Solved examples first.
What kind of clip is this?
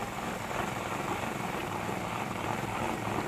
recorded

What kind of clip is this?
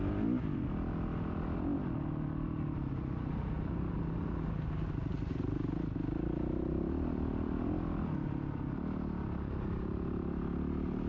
recorded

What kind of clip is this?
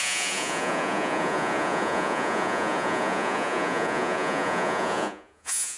remade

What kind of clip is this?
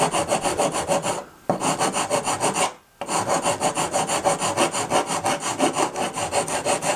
recorded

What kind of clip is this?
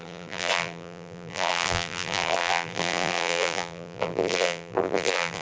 remade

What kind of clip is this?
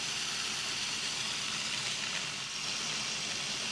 recorded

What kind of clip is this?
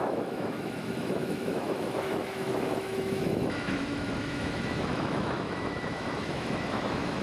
remade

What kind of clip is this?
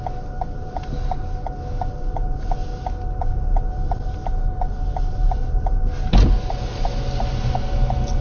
recorded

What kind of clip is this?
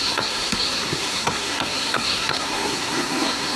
remade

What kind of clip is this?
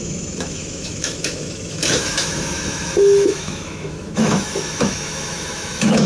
remade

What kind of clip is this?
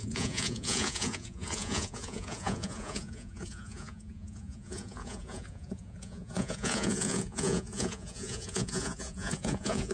remade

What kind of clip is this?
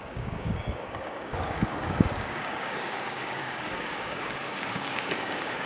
remade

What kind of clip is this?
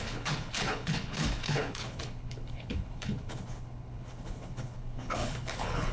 remade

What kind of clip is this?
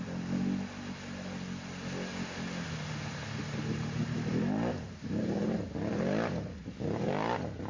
recorded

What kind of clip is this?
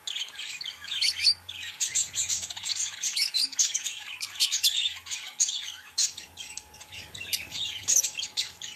remade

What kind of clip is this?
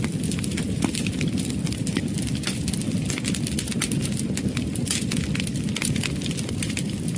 remade